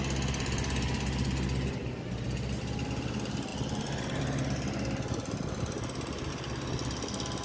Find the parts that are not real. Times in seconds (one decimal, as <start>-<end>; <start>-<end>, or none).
none